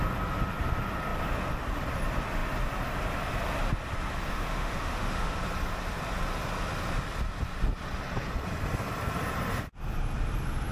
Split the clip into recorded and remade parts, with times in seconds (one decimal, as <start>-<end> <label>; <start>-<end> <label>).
0.0-4.3 recorded; 4.3-5.4 remade; 5.4-10.7 recorded